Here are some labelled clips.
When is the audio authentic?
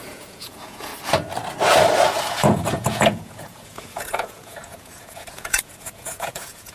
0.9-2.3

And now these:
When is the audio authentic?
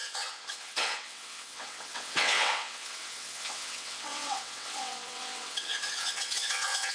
none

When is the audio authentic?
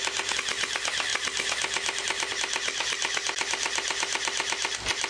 0.0-5.1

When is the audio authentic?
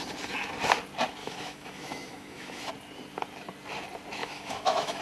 0.0-1.2; 2.7-4.2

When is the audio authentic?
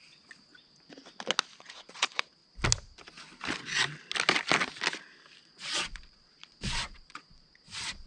0.5-1.6; 2.4-5.4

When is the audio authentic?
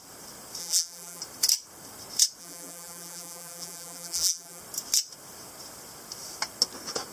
0.0-0.6; 1.2-2.4; 4.6-7.1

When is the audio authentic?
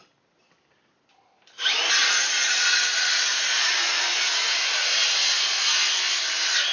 0.0-2.0; 6.0-6.7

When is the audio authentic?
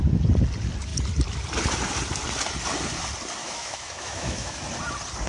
0.0-3.4; 4.6-5.3